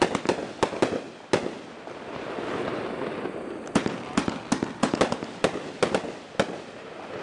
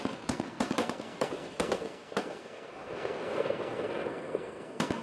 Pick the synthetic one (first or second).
second